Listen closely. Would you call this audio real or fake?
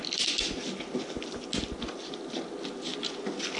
real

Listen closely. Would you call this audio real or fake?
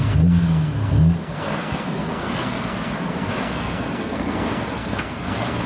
fake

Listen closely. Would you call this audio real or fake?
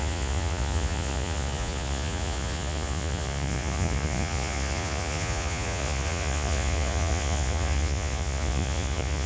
fake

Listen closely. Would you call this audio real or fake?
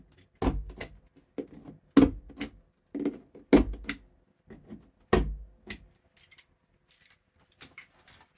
real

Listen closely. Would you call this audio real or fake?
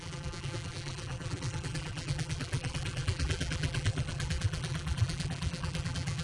fake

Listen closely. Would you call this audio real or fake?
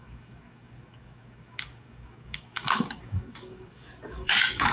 fake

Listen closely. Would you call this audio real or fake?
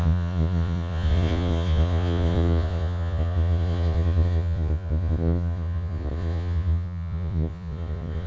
fake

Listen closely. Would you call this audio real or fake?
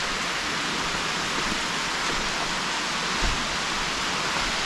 real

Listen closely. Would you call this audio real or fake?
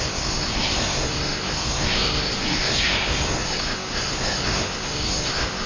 fake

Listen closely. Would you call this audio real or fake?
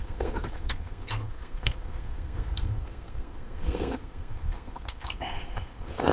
fake